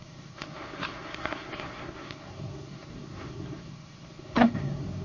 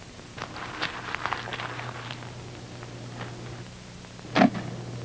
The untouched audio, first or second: second